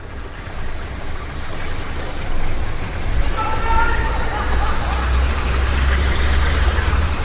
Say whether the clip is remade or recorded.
recorded